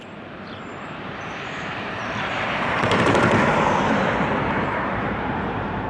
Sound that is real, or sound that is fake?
fake